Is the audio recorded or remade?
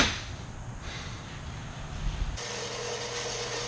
recorded